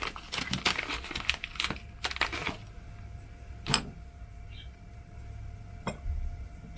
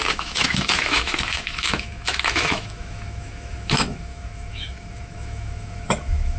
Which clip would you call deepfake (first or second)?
second